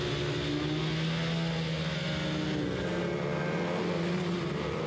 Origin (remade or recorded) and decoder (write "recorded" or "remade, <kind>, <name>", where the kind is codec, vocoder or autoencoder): recorded